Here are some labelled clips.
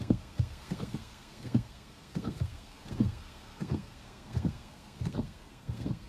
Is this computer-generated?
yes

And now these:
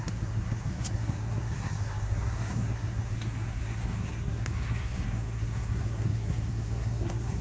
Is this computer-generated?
yes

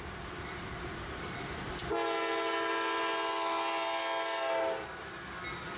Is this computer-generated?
no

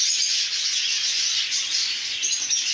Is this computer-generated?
no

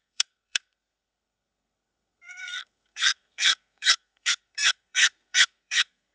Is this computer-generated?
yes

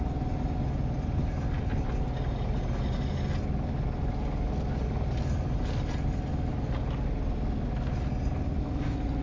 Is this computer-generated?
no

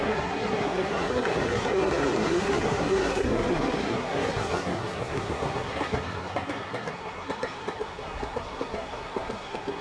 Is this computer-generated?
yes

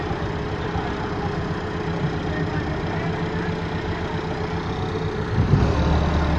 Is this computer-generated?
no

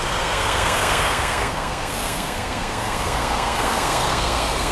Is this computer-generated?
yes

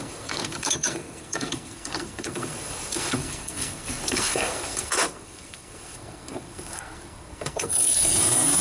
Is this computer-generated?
yes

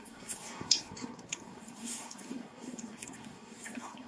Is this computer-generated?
yes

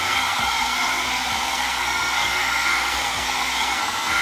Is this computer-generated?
yes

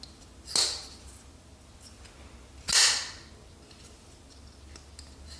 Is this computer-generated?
no